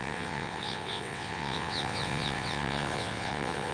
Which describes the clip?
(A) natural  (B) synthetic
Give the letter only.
B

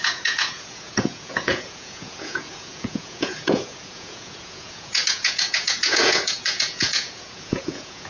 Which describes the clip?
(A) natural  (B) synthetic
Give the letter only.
B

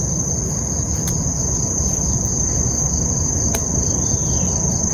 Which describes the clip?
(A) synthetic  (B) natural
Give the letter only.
B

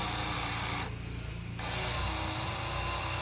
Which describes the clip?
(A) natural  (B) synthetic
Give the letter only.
A